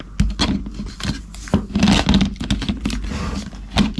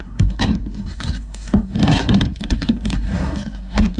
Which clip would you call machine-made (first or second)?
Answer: second